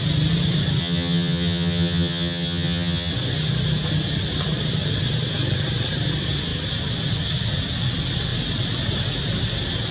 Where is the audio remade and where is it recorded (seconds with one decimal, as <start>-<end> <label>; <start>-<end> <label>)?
0.0-0.8 recorded; 0.8-3.1 remade; 3.1-9.9 recorded